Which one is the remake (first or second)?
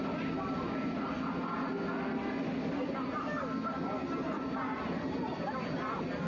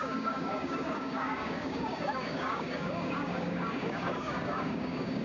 second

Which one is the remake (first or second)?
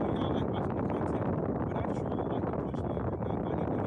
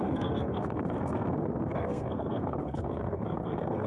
second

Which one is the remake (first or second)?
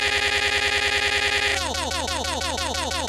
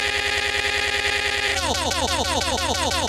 second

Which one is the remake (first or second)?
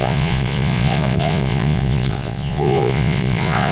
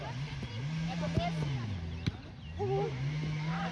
first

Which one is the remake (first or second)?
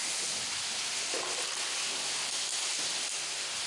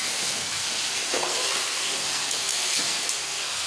second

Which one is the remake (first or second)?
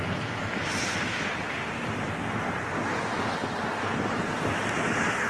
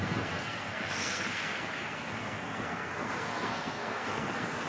second